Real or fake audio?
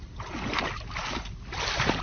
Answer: real